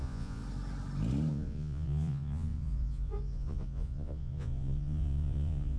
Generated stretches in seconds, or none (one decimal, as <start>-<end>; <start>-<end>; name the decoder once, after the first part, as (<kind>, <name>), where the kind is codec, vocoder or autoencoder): 0.0-0.4 (vocoder, Vocos); 1.3-5.8